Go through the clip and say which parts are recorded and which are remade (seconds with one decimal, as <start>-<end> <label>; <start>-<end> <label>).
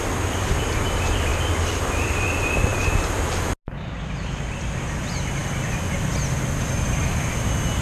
0.0-7.8 recorded